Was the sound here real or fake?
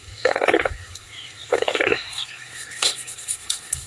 fake